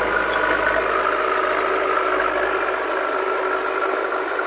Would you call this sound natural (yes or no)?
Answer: yes